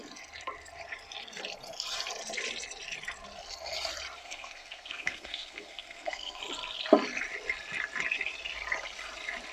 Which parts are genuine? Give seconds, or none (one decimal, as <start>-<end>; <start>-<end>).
0.0-4.2; 6.4-9.5